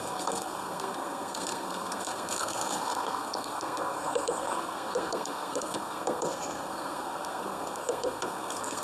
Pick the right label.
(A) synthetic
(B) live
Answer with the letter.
A